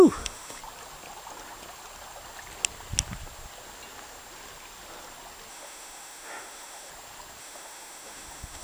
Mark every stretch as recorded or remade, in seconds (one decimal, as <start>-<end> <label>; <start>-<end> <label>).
0.0-0.6 remade; 0.6-5.5 recorded; 5.5-6.9 remade; 6.9-7.4 recorded; 7.4-8.6 remade